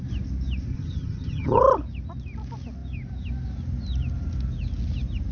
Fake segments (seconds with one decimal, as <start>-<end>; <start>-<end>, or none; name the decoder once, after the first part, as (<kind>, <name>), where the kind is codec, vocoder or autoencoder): 0.7-1.6 (vocoder, HiFi-GAN)